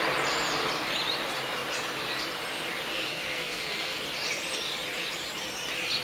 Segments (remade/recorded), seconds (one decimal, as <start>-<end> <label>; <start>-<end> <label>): 0.0-2.9 recorded; 2.9-4.0 remade; 4.0-6.0 recorded